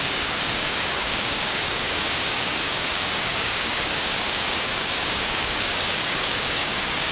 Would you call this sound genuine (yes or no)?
no